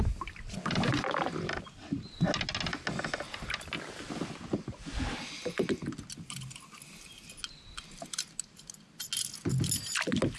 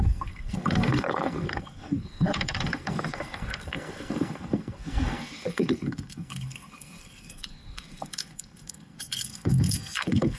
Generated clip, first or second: second